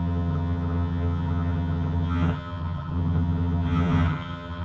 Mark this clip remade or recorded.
remade